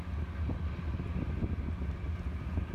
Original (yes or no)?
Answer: yes